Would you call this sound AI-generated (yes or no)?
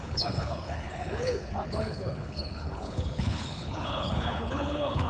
yes